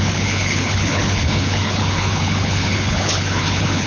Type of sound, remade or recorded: remade